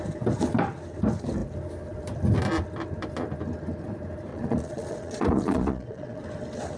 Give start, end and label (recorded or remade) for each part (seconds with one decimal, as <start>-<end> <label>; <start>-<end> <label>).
0.0-4.3 recorded; 4.3-6.2 remade; 6.2-6.8 recorded